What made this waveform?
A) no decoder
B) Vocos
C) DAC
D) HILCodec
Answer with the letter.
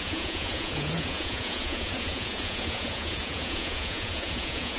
B